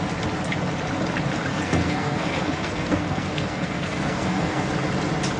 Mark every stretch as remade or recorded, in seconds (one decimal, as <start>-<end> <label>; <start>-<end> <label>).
0.0-1.5 recorded; 1.5-4.7 remade; 4.7-5.4 recorded